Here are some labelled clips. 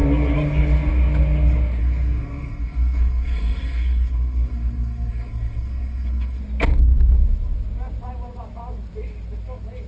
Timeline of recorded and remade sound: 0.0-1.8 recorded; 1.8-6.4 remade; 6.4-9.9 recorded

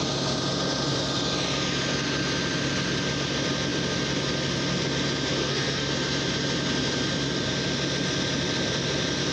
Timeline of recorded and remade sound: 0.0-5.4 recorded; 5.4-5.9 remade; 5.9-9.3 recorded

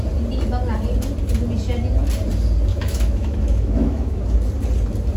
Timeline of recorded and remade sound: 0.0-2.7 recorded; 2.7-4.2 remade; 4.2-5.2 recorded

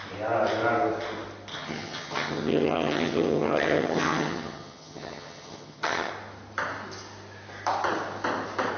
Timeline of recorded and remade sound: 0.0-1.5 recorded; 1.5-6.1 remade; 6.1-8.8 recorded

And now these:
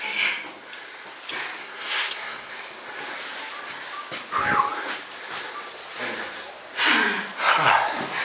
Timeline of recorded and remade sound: 0.0-1.6 recorded; 1.6-2.5 remade; 2.5-8.2 recorded

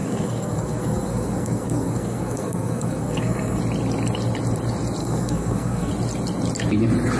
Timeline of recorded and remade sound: 0.0-3.6 remade; 3.6-5.0 recorded; 5.0-5.9 remade; 5.9-7.2 recorded

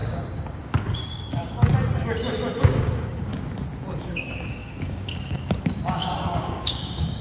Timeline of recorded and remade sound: 0.0-1.7 remade; 1.7-2.6 recorded; 2.6-3.3 remade; 3.3-4.0 recorded; 4.0-7.2 remade

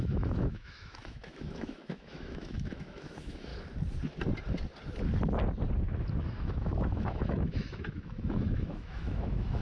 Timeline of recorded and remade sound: 0.0-3.5 remade; 3.5-6.4 recorded; 6.4-9.6 remade